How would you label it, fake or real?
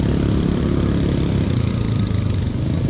real